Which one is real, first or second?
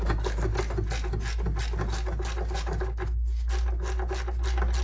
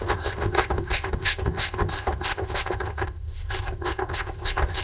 first